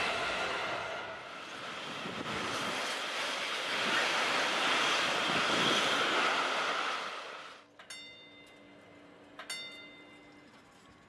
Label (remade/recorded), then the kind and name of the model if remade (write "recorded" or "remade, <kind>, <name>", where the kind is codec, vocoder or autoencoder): recorded